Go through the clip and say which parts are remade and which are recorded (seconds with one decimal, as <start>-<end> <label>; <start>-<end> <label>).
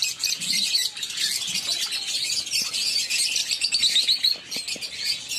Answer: 0.0-5.4 recorded